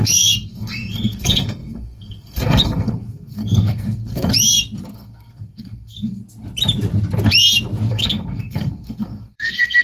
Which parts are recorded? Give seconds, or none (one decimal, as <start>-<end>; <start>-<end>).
4.3-4.9; 6.2-7.9